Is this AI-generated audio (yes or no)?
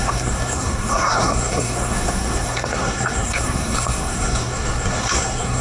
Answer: yes